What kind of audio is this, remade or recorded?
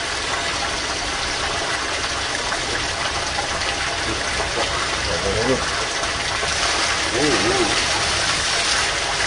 recorded